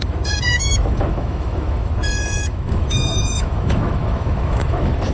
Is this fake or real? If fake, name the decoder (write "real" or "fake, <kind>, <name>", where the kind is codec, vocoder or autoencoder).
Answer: fake, autoencoder, DAC-VAE